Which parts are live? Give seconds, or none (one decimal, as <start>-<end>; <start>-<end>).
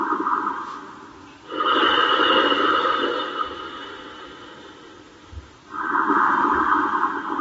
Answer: 0.0-7.4